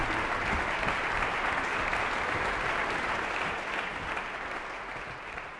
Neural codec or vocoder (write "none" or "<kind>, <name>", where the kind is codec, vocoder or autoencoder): none